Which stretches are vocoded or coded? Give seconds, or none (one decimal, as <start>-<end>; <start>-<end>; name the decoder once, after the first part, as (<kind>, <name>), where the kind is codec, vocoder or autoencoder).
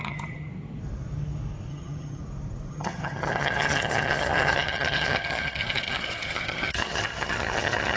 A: 0.0-0.5 (vocoder, HiFi-GAN); 1.7-2.2; 2.7-8.0